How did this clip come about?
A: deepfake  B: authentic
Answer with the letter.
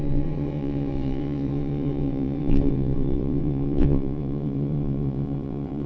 A